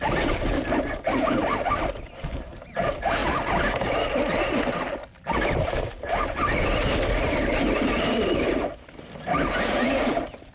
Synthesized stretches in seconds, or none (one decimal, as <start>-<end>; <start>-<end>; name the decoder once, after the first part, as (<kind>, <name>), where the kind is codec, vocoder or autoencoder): none